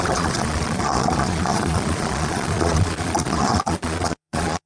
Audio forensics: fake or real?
fake